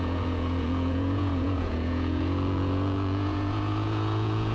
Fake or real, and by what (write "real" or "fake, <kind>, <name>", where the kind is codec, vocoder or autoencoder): fake, vocoder, Vocos